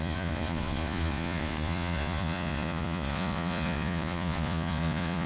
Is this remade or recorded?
remade